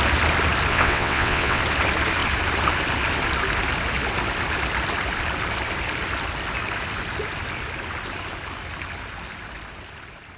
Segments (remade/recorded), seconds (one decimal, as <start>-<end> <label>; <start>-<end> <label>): 0.0-0.7 recorded; 0.7-1.6 remade; 1.6-10.4 recorded